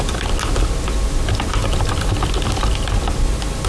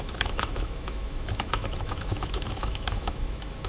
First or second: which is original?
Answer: first